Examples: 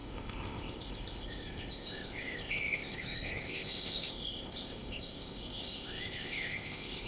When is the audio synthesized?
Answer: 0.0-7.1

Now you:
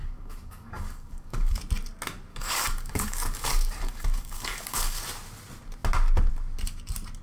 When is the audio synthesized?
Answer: 0.0-1.6; 2.3-5.0

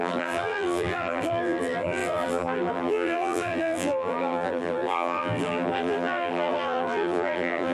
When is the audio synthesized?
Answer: 0.0-7.7